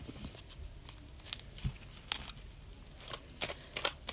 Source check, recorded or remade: recorded